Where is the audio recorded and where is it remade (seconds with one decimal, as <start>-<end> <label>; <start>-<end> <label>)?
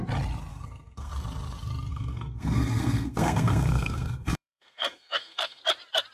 0.0-0.5 recorded; 0.5-1.1 remade; 1.1-1.9 recorded; 1.9-5.6 remade; 5.6-6.1 recorded